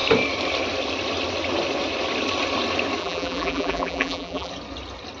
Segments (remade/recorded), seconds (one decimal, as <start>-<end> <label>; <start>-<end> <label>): 0.0-3.0 recorded; 3.0-4.5 remade; 4.5-5.2 recorded